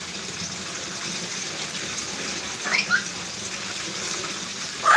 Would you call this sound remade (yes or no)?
no